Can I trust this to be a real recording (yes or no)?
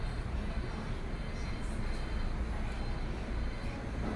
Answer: yes